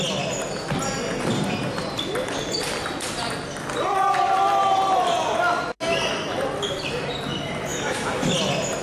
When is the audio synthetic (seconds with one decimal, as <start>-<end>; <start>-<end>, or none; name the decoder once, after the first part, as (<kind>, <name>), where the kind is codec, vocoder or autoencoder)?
7.7-8.3 (autoencoder, DAC-VAE)